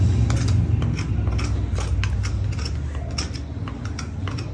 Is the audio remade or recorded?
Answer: recorded